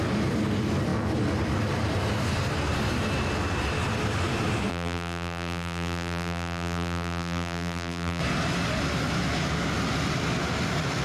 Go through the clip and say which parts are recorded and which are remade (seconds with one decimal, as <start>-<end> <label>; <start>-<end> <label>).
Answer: 0.0-4.7 recorded; 4.7-8.2 remade; 8.2-11.0 recorded